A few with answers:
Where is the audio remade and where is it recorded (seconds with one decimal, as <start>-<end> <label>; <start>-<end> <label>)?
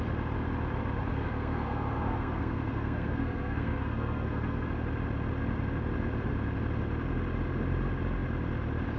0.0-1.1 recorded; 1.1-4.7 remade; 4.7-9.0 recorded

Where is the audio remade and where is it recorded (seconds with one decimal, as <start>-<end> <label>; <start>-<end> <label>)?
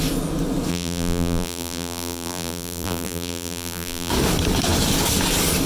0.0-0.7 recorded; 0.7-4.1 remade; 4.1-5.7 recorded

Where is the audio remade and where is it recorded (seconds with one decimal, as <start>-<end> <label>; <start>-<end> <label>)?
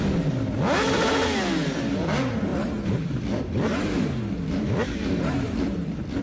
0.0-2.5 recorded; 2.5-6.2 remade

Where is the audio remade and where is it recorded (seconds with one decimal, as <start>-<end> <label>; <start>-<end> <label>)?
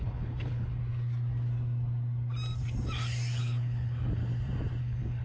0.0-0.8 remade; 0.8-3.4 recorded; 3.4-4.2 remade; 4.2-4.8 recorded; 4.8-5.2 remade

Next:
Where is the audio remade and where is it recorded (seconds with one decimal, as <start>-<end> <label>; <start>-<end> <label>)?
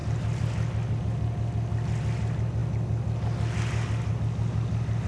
0.0-5.1 recorded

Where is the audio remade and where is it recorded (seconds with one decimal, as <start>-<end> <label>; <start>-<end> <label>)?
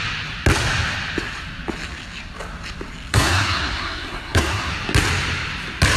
0.0-3.1 recorded; 3.1-4.7 remade; 4.7-6.0 recorded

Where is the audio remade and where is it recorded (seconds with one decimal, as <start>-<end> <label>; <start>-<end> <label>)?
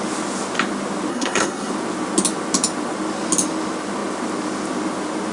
0.0-1.1 recorded; 1.1-1.7 remade; 1.7-5.3 recorded